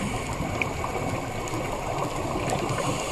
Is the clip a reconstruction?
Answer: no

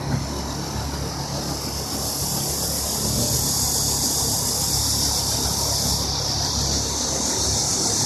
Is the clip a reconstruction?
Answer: no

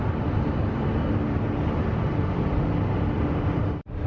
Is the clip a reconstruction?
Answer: no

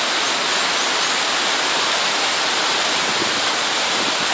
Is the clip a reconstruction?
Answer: no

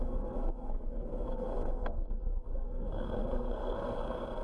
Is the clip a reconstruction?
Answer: yes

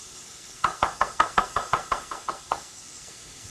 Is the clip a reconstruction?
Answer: yes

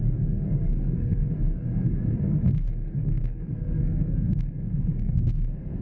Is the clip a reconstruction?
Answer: yes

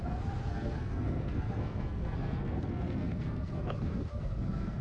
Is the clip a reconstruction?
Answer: yes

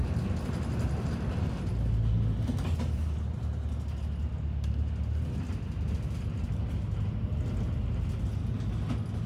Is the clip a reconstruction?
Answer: no